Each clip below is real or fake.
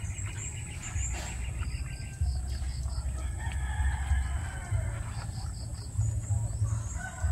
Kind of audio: real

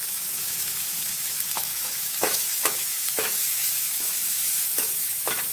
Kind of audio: fake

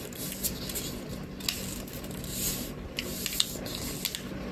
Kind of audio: real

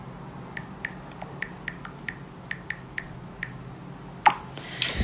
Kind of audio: real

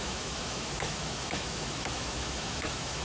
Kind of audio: fake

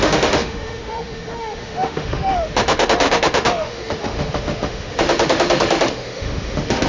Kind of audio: fake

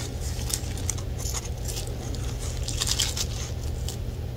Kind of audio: real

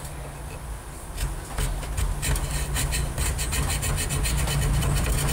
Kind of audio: real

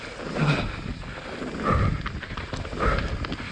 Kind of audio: real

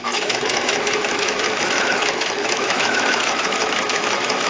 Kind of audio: fake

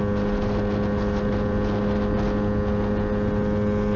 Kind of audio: real